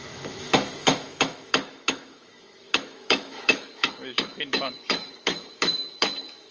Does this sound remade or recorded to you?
remade